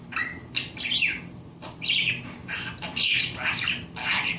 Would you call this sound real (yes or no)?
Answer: yes